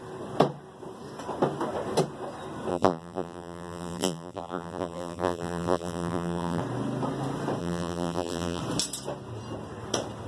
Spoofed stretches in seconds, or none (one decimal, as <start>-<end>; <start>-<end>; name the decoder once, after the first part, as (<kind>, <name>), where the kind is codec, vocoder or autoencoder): 2.7-6.6 (vocoder, BigVGAN v2); 7.6-8.6